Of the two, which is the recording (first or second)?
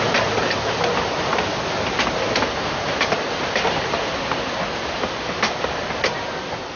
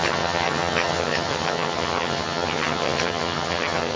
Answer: first